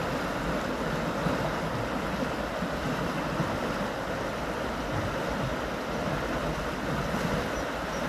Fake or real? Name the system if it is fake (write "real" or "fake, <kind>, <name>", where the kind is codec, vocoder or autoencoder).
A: real